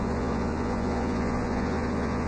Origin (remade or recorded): remade